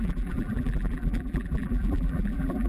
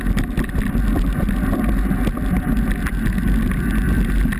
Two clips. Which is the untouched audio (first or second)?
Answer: second